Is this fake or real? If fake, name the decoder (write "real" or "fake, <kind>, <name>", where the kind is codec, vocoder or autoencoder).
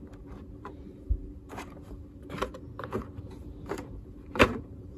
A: fake, vocoder, BigVGAN v2